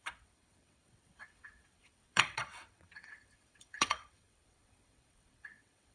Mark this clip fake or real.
fake